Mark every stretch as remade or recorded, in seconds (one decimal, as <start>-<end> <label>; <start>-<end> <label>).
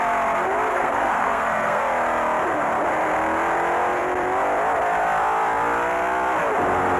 0.0-0.7 recorded; 0.7-1.8 remade; 1.8-7.0 recorded